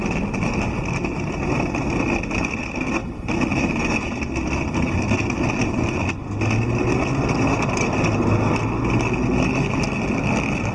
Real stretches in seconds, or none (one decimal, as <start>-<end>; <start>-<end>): 0.0-3.0; 4.0-10.7

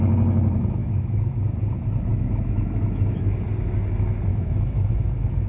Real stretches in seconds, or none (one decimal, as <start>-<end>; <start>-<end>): 0.0-0.8; 1.3-2.1; 3.4-4.3; 4.9-5.5

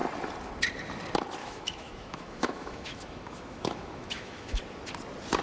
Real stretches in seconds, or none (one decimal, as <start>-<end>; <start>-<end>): 0.0-1.4; 4.6-5.4

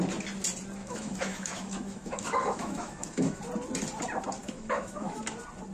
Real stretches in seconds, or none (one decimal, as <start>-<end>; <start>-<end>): 0.0-0.8; 3.4-4.4; 5.2-5.7

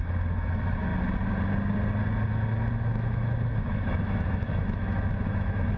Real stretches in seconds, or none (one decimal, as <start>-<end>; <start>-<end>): 0.9-2.7

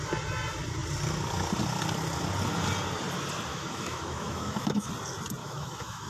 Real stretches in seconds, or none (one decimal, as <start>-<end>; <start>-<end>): 0.0-3.5; 4.9-5.4